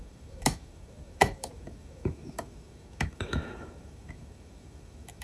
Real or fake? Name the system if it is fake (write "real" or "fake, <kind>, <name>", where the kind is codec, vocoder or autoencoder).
fake, autoencoder, DAC-VAE